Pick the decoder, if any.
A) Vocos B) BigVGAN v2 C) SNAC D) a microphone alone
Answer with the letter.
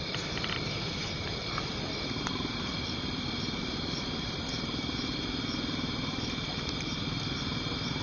B